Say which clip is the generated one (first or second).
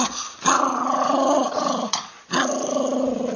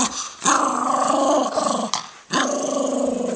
first